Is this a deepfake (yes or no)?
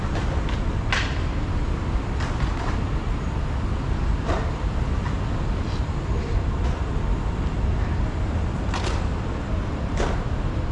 no